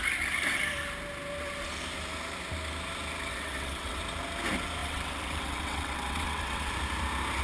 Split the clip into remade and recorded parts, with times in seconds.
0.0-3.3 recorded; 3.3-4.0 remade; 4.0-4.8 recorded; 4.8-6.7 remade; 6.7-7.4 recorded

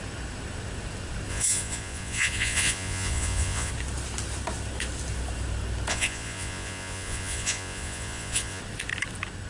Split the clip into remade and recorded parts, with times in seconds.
0.0-1.3 recorded; 1.3-3.7 remade; 3.7-5.9 recorded; 5.9-8.6 remade; 8.6-9.5 recorded

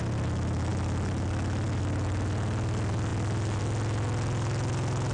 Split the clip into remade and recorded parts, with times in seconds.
0.0-5.1 recorded

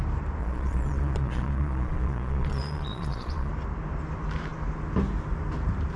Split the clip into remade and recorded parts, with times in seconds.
0.0-0.4 recorded; 0.4-3.5 remade; 3.5-6.0 recorded

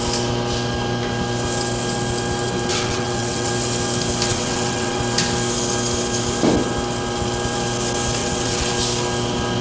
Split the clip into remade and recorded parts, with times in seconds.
0.0-2.7 recorded; 2.7-3.5 remade; 3.5-4.3 recorded; 4.3-5.0 remade; 5.0-8.2 recorded; 8.2-8.7 remade; 8.7-9.6 recorded

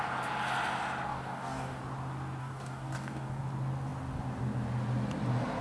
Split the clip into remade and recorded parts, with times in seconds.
0.0-1.1 recorded; 1.1-1.8 remade; 1.8-2.4 recorded; 2.4-3.4 remade; 3.4-5.6 recorded

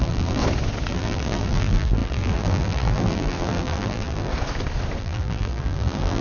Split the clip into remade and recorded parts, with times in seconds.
0.0-0.4 remade; 0.4-0.9 recorded; 0.9-4.3 remade; 4.3-5.0 recorded; 5.0-6.2 remade

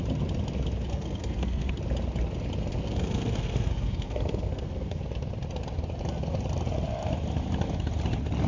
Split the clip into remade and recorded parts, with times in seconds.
0.0-0.9 recorded; 0.9-1.7 remade; 1.7-2.7 recorded; 2.7-5.0 remade; 5.0-8.5 recorded